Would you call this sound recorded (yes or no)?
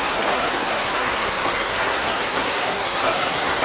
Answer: no